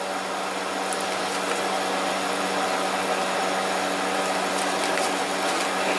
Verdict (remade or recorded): recorded